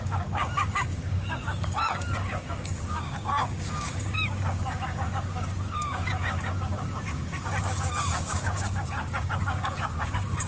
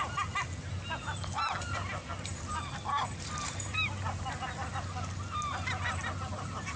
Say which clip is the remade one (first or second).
first